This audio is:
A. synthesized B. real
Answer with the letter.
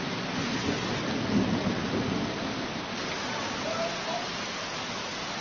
B